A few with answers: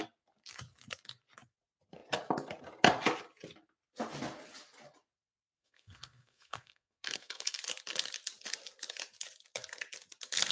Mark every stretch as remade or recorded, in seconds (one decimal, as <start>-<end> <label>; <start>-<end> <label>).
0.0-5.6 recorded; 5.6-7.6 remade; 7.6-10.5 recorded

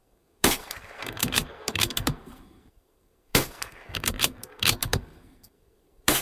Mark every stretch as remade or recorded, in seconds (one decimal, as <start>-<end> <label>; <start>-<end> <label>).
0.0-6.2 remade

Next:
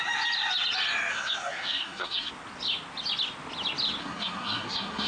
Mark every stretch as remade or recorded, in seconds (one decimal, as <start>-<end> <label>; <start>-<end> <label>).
0.0-1.1 recorded; 1.1-2.3 remade; 2.3-4.0 recorded; 4.0-5.1 remade

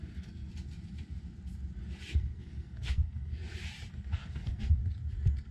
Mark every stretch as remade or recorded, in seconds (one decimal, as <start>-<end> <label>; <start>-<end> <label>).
0.0-0.5 remade; 0.5-2.1 recorded; 2.1-3.4 remade; 3.4-3.9 recorded; 3.9-4.8 remade; 4.8-5.5 recorded